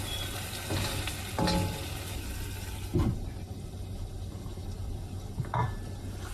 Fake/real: real